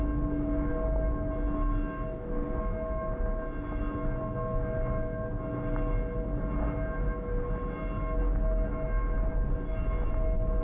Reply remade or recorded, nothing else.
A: recorded